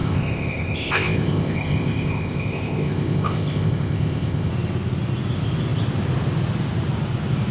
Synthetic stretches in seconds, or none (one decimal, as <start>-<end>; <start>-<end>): 0.0-4.5

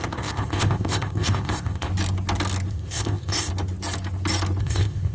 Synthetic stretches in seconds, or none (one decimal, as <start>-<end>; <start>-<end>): 0.0-1.9; 2.7-3.5; 4.6-5.1

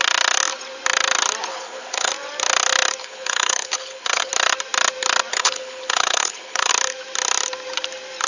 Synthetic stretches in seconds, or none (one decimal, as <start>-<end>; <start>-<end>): 1.5-2.1; 3.0-4.3; 5.3-6.7

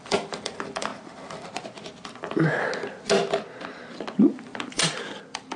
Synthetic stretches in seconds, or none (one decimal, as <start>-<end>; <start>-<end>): 0.0-0.9; 4.3-5.6

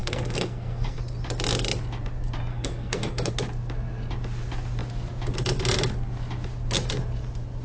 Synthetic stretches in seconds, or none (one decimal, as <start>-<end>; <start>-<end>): 0.0-1.0; 2.5-3.3

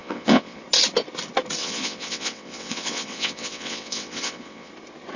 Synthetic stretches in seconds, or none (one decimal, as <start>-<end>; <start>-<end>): 0.0-0.6; 1.6-4.7

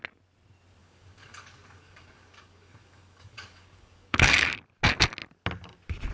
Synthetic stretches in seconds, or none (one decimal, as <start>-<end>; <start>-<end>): 0.8-4.5

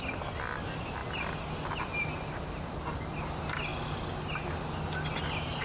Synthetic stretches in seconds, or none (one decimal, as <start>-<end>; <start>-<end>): none